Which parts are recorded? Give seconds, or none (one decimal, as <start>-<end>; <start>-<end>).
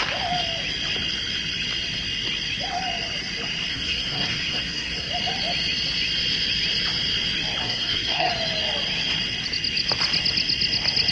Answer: 0.0-3.7; 5.1-7.6; 8.3-11.1